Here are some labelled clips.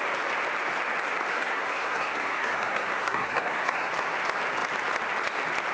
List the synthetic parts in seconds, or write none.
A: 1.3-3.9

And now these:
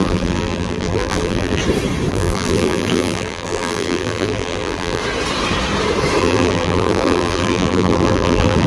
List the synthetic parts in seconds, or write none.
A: 0.0-1.6; 2.1-5.0; 6.2-8.7

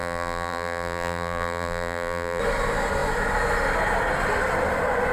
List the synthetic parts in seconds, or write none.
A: 0.0-2.4

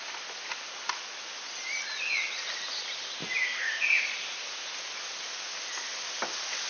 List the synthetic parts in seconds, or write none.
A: 3.2-4.0

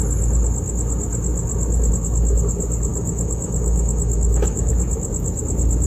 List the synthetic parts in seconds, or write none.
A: 2.9-4.7

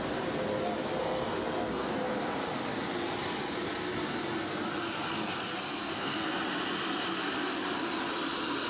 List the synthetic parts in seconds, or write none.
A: 1.0-1.9; 5.2-6.3

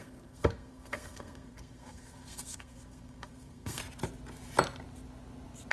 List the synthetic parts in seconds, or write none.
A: 0.0-3.8